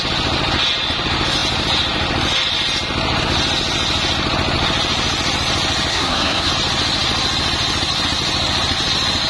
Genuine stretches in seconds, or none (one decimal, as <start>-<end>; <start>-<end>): 0.0-5.9; 6.5-9.3